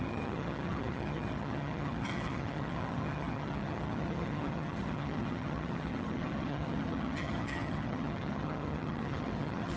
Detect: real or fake fake